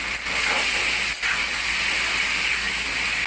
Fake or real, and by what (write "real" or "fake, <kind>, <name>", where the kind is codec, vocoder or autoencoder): real